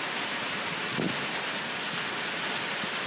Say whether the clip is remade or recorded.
recorded